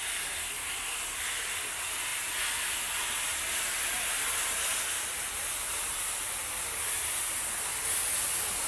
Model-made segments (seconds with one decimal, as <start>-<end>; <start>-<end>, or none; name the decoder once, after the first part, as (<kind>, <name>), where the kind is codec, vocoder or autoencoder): none